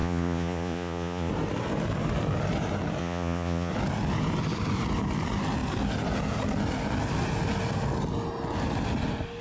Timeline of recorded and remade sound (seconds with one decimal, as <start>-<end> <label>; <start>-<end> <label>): 0.0-1.3 remade; 1.3-3.0 recorded; 3.0-3.7 remade; 3.7-9.4 recorded